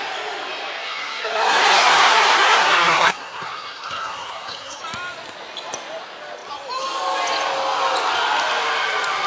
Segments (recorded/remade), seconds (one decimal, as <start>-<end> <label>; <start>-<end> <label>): 0.0-0.8 recorded; 0.8-4.8 remade; 4.8-9.3 recorded